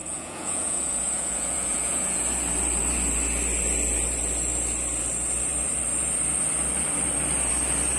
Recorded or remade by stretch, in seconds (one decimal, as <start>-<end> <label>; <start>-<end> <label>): 0.0-2.2 remade; 2.2-8.0 recorded